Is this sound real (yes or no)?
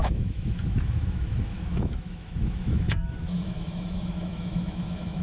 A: no